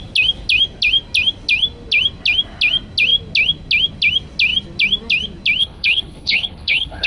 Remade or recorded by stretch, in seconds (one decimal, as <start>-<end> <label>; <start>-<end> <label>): 0.0-5.6 recorded; 5.6-7.1 remade